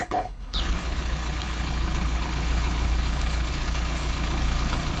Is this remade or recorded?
remade